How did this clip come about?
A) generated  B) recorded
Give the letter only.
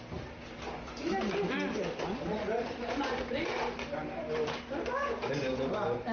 B